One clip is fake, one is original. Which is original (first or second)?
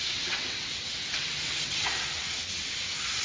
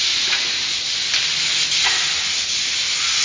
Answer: second